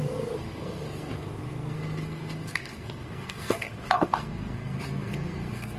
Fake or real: fake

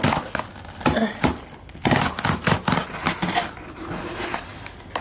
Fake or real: real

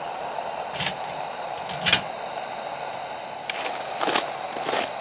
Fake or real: real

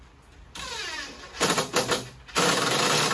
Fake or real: real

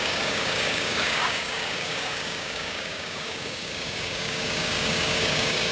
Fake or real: fake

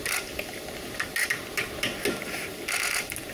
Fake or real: real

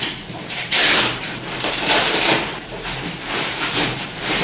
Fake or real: fake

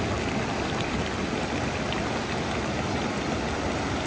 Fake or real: real